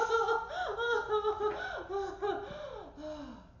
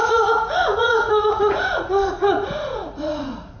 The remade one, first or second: second